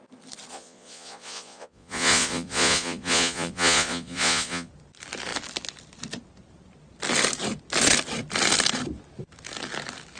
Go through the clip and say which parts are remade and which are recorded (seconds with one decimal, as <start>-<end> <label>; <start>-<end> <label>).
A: 0.0-0.5 recorded; 0.5-4.7 remade; 4.7-10.2 recorded